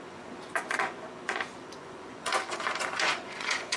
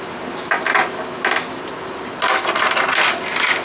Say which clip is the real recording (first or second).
second